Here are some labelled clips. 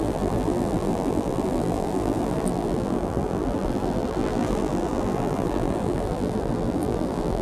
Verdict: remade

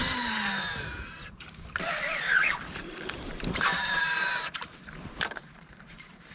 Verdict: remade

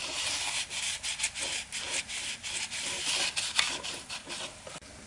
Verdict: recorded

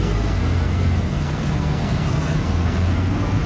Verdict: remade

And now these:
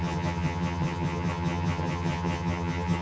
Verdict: remade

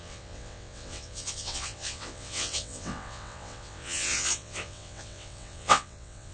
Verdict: remade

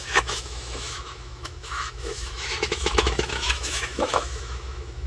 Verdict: remade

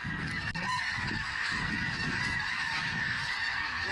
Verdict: remade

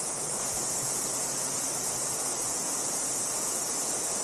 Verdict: remade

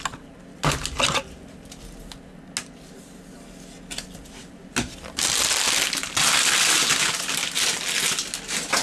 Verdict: recorded